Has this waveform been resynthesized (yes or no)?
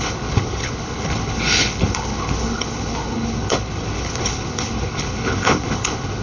yes